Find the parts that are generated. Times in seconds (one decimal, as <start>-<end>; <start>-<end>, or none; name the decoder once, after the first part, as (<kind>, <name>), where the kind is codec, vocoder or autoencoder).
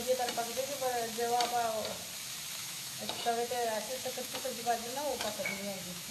2.6-6.1 (autoencoder, DAC-VAE)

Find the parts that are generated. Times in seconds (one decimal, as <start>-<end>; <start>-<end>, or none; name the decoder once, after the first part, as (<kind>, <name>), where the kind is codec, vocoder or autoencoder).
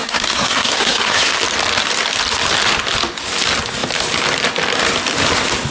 0.0-1.3 (codec, SNAC)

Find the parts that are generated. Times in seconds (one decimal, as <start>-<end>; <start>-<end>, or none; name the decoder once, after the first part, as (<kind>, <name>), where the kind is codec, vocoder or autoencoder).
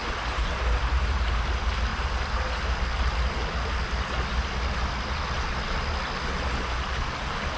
0.0-0.5 (vocoder, BigVGAN v2)